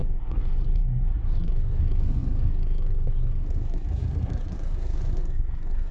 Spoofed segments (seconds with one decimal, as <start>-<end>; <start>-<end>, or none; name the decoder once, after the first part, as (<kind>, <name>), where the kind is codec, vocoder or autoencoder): 0.0-5.9 (codec, SNAC)